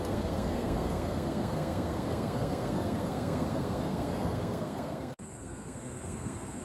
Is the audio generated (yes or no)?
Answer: yes